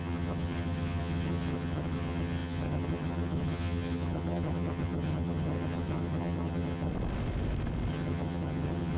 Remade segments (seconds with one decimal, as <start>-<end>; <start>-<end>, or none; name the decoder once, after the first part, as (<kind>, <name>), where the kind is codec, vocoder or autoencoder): 0.0-6.9 (vocoder, HiFi-GAN); 7.9-9.0